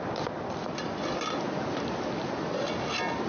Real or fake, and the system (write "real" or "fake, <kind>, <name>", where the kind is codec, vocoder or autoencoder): real